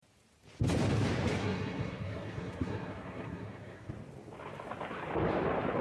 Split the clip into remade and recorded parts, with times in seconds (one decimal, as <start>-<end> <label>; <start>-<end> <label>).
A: 0.0-1.4 recorded; 1.4-3.9 remade; 3.9-5.8 recorded